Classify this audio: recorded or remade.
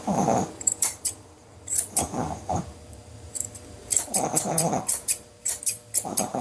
remade